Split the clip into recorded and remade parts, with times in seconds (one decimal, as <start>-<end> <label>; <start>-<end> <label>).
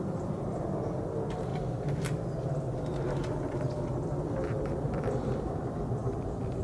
0.0-1.5 remade; 1.5-4.2 recorded; 4.2-6.0 remade; 6.0-6.6 recorded